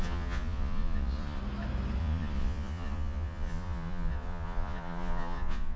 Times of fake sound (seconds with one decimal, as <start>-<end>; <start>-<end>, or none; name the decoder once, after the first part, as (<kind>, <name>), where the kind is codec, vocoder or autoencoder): 0.0-1.4 (vocoder, Vocos); 2.0-5.8